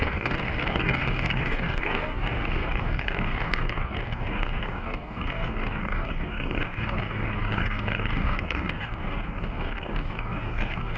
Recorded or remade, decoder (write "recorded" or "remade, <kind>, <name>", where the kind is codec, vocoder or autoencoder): remade, codec, DAC